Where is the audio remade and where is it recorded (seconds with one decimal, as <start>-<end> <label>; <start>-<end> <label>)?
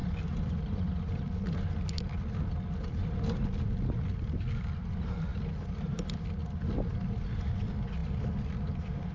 0.0-9.1 recorded